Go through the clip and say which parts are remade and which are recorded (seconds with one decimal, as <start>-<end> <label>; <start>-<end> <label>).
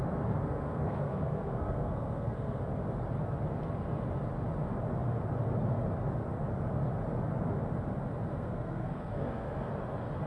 0.0-0.4 recorded; 0.4-2.6 remade; 2.6-8.3 recorded; 8.3-9.7 remade; 9.7-10.3 recorded